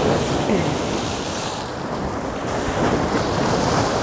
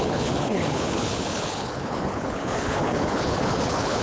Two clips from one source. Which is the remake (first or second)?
second